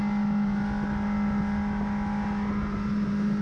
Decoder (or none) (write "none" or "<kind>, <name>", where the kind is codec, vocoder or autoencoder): none